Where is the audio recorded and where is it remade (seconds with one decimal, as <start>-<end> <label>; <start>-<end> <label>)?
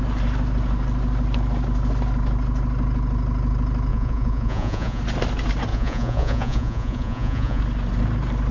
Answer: 0.0-3.9 recorded; 3.9-5.0 remade; 5.0-5.7 recorded; 5.7-7.6 remade; 7.6-8.5 recorded